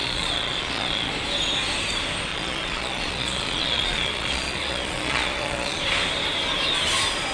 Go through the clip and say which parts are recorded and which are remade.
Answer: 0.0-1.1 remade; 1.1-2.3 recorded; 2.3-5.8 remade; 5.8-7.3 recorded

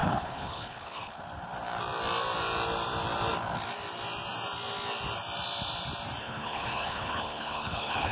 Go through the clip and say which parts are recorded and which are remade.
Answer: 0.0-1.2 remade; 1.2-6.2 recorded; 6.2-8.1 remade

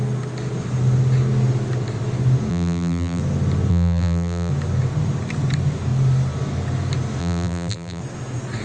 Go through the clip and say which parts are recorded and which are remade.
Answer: 0.0-2.5 recorded; 2.5-3.2 remade; 3.2-3.7 recorded; 3.7-4.5 remade; 4.5-7.2 recorded; 7.2-8.0 remade; 8.0-8.6 recorded